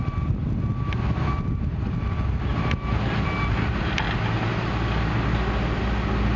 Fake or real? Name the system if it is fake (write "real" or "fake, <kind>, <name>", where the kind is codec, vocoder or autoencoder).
real